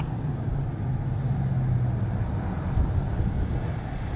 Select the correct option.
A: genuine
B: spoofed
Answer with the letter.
A